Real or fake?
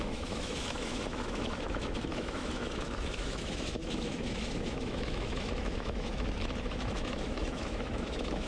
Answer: fake